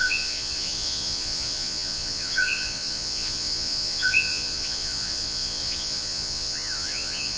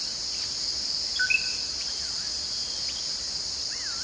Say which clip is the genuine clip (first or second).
second